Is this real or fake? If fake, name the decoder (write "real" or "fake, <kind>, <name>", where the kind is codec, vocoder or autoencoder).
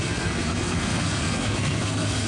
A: fake, codec, SNAC